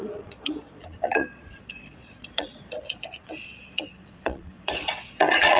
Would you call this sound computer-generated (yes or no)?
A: yes